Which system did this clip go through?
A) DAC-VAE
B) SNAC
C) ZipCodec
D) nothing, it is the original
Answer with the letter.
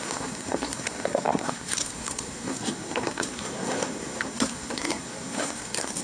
B